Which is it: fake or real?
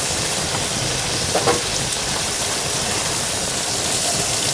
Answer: fake